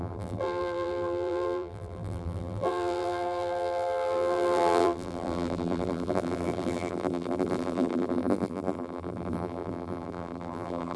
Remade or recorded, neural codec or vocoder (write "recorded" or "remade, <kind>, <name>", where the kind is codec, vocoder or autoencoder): remade, vocoder, BigVGAN v2